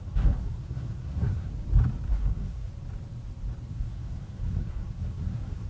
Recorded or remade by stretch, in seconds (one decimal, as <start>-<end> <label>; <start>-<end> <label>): 0.0-1.5 remade; 1.5-2.1 recorded; 2.1-2.7 remade; 2.7-3.7 recorded; 3.7-5.7 remade